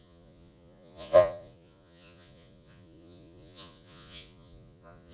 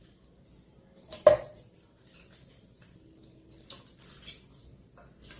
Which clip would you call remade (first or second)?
first